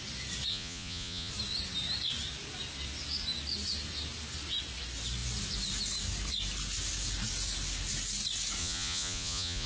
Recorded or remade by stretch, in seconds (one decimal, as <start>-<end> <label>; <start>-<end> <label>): 0.0-0.5 recorded; 0.5-1.3 remade; 1.3-8.6 recorded; 8.6-9.7 remade